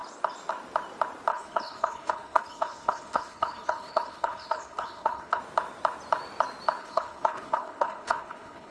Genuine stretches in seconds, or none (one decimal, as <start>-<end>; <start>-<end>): 0.0-1.3; 5.4-6.8